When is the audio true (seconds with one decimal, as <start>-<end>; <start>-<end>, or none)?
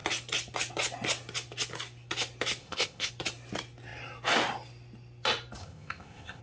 0.0-2.6; 3.1-5.6